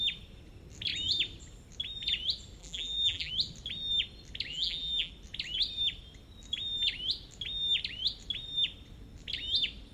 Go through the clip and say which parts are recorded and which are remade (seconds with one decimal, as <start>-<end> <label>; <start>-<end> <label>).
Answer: 0.0-2.6 recorded; 2.6-3.3 remade; 3.3-4.5 recorded; 4.5-5.1 remade; 5.1-9.9 recorded